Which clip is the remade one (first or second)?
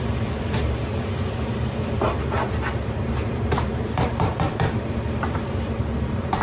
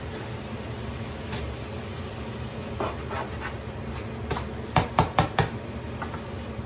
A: first